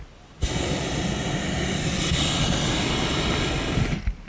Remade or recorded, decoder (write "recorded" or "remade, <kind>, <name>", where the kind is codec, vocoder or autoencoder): recorded